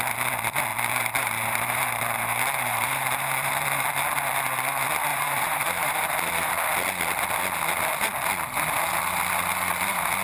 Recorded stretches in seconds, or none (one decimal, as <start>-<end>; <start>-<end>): 0.0-0.7; 3.9-5.1; 6.5-10.2